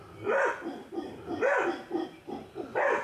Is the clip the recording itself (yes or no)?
yes